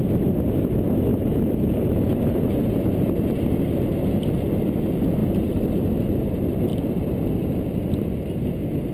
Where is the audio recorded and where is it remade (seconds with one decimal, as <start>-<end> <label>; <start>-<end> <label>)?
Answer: 0.0-1.1 recorded; 1.1-1.9 remade; 1.9-5.2 recorded; 5.2-5.7 remade; 5.7-8.9 recorded